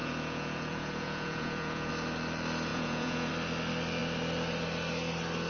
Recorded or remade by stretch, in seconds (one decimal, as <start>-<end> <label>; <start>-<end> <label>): 0.0-1.9 remade; 1.9-2.7 recorded; 2.7-3.3 remade; 3.3-5.5 recorded